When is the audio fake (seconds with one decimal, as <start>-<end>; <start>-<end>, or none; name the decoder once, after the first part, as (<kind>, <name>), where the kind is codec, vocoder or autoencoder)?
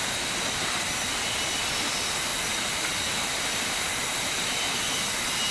none